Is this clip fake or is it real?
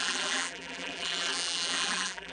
fake